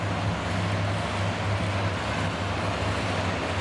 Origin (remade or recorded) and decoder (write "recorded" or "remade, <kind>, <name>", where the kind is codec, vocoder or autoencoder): recorded